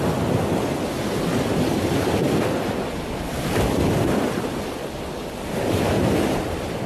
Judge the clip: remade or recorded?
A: recorded